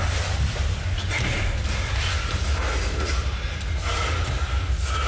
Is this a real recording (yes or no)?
yes